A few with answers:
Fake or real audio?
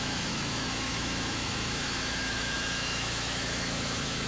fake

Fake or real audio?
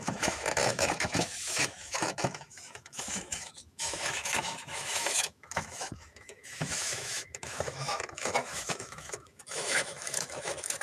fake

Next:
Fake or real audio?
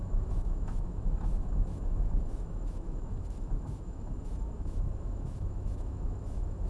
fake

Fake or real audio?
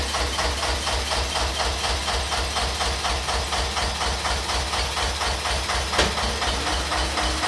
real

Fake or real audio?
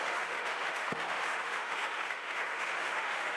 fake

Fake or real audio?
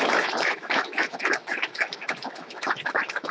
fake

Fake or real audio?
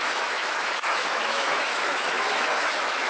fake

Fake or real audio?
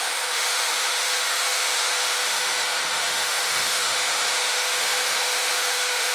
fake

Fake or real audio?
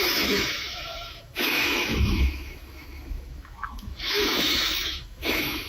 fake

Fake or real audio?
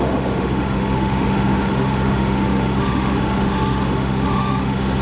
fake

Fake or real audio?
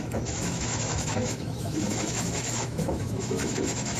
fake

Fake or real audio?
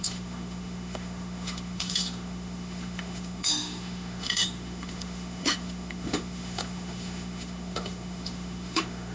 fake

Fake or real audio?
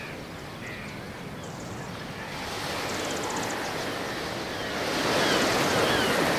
real